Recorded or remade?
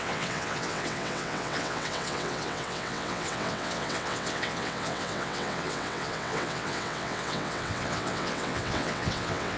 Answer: remade